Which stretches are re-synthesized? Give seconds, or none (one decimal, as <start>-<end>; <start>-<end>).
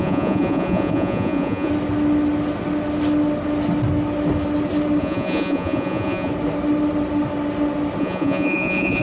0.0-1.7; 5.0-6.3; 8.0-9.0